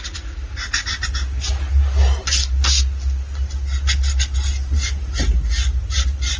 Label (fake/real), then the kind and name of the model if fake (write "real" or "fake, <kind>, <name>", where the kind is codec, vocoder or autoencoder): real